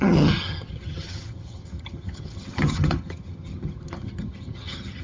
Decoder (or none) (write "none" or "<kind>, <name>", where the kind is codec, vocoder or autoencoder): vocoder, HiFi-GAN